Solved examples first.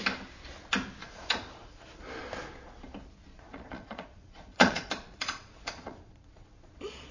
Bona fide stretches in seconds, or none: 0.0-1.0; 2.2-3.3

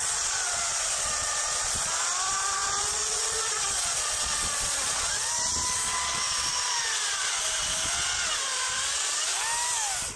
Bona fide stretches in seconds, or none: 9.3-10.2

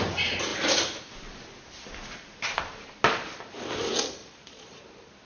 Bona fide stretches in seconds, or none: 0.0-4.2; 4.8-5.3

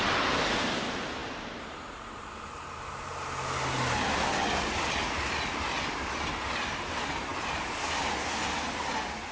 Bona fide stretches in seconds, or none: 0.0-9.3

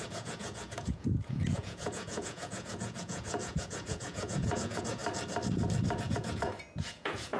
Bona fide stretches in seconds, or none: 5.0-6.0